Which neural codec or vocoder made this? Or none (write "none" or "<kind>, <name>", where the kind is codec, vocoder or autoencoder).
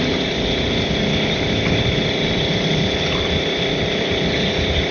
none